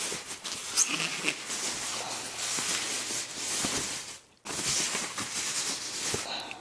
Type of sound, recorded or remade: recorded